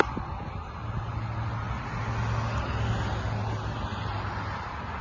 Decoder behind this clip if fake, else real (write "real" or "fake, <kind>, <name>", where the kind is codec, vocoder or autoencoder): real